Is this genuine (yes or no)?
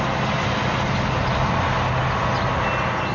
yes